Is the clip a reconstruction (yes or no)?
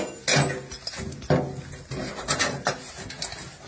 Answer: no